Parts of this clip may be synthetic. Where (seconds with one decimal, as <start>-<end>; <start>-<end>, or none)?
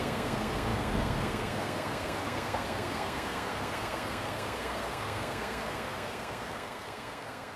0.0-7.6